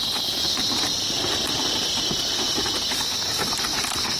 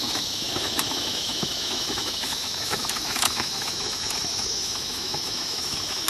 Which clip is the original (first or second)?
first